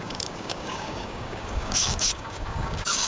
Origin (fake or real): fake